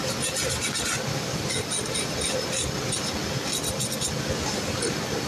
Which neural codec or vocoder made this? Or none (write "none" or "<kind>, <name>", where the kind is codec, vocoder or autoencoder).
none